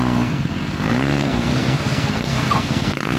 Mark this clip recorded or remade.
remade